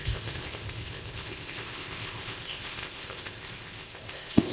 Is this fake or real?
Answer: fake